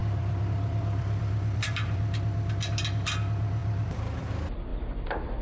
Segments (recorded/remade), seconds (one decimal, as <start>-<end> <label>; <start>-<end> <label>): 0.0-2.0 remade; 2.0-3.6 recorded; 3.6-4.2 remade; 4.2-4.7 recorded; 4.7-5.4 remade